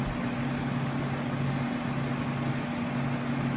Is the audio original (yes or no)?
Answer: yes